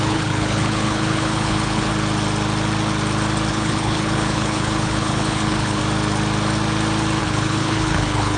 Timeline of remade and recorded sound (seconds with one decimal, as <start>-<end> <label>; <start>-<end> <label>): 0.0-1.9 remade; 1.9-3.5 recorded; 3.5-5.8 remade; 5.8-7.2 recorded; 7.2-8.4 remade